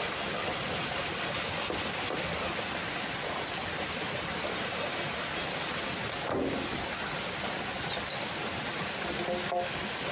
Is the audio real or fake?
real